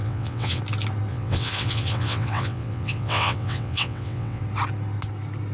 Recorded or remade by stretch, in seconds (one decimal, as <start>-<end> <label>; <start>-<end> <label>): 0.0-0.6 remade; 0.6-1.1 recorded; 1.1-4.4 remade; 4.4-5.5 recorded